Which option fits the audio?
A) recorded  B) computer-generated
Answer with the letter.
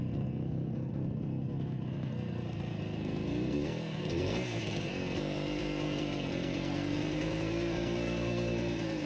B